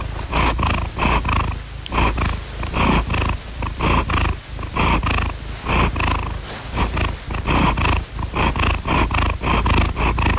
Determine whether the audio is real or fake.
real